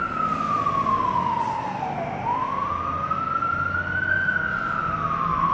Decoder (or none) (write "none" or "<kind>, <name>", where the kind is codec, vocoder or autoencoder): none